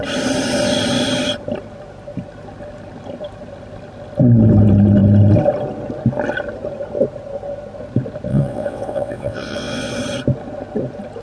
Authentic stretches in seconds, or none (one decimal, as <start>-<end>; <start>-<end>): 0.0-8.3; 9.9-11.2